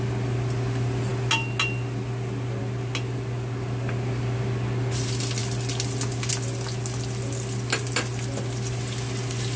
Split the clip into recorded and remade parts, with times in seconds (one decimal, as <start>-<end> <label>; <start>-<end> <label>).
0.0-9.6 recorded